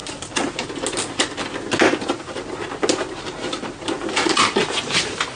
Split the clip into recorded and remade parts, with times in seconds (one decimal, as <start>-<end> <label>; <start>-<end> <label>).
0.0-5.4 recorded